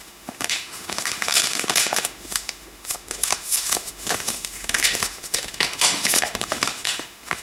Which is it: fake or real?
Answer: fake